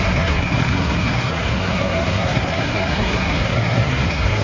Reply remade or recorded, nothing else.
remade